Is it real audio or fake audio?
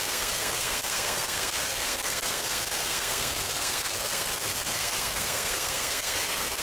fake